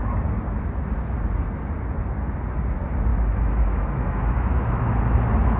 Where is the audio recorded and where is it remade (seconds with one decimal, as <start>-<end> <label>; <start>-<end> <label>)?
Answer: 0.0-3.1 recorded; 3.1-5.0 remade; 5.0-5.6 recorded